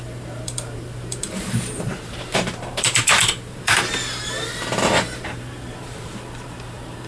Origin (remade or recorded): remade